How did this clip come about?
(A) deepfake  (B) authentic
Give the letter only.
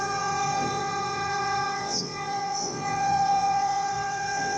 A